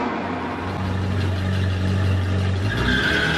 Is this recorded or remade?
recorded